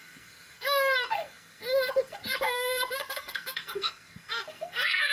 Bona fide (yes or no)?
no